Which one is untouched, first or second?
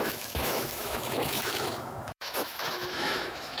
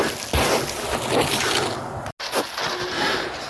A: second